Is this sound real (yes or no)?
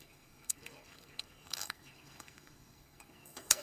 no